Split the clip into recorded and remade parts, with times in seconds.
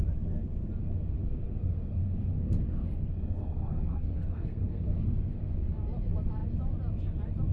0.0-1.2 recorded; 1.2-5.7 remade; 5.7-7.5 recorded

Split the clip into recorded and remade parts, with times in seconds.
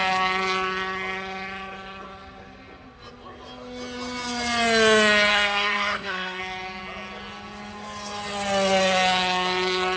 0.0-5.3 recorded; 5.3-6.4 remade; 6.4-10.0 recorded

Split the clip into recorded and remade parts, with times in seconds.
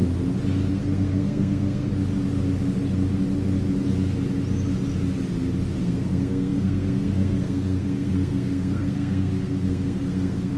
0.0-0.7 recorded; 0.7-1.9 remade; 1.9-5.8 recorded; 5.8-10.6 remade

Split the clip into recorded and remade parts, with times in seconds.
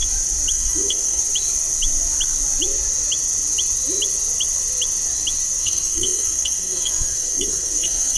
0.0-0.5 recorded; 0.5-1.2 remade; 1.2-5.6 recorded; 5.6-8.2 remade